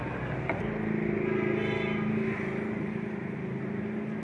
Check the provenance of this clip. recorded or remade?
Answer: recorded